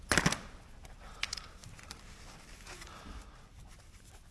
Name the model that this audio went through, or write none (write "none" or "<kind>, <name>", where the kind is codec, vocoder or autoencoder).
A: none